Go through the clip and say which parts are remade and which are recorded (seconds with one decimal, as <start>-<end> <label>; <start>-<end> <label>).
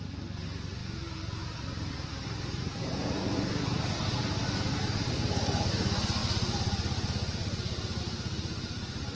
0.0-9.2 recorded